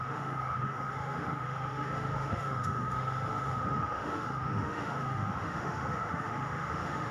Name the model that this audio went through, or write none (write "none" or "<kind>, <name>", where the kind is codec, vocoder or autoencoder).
autoencoder, DAC-VAE